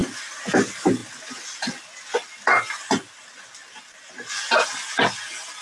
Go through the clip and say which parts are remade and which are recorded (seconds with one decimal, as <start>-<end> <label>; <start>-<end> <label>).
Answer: 0.0-5.6 recorded